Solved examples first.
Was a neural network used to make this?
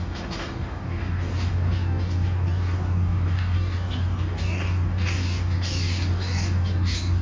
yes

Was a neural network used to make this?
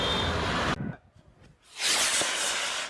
no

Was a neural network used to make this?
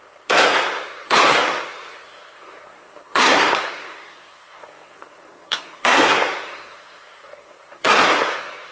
yes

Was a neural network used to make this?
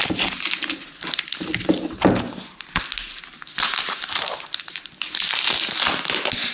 no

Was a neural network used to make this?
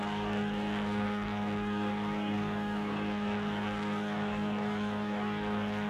yes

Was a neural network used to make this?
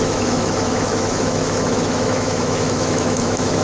yes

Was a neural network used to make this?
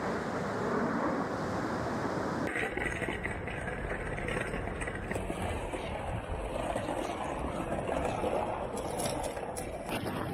no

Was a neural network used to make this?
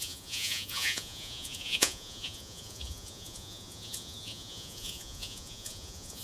yes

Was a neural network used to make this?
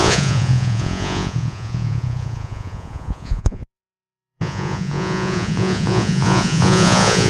yes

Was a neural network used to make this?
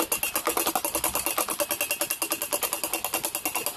no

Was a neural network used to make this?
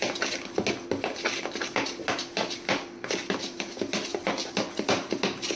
no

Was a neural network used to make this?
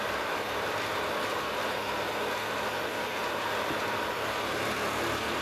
no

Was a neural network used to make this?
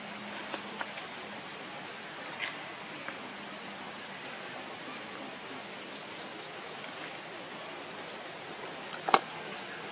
no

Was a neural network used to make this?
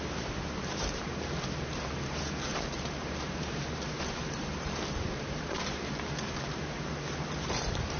yes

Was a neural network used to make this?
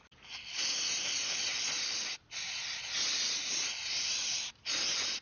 no